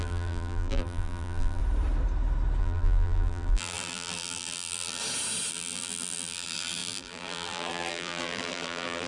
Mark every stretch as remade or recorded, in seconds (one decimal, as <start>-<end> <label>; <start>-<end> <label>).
0.0-1.6 remade; 1.6-2.6 recorded; 2.6-5.0 remade; 5.0-5.5 recorded; 5.5-9.1 remade